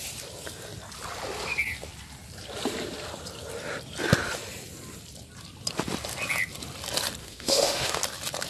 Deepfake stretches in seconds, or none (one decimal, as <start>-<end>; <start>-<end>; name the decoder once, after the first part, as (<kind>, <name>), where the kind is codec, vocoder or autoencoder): 7.2-8.0 (autoencoder, DAC-VAE)